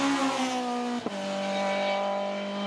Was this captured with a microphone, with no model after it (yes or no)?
yes